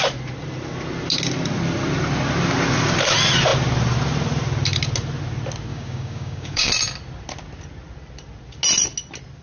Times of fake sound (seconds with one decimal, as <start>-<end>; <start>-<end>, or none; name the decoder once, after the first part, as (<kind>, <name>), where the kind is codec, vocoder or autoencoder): 5.7-6.7 (codec, DAC)